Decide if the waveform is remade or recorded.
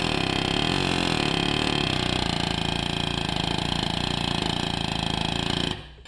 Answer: recorded